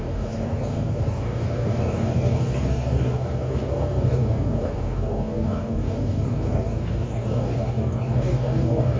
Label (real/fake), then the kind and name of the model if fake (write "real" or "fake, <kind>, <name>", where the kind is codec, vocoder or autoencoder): fake, codec, DAC